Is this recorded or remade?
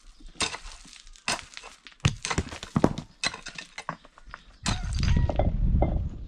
recorded